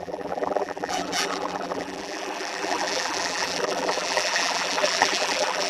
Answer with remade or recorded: remade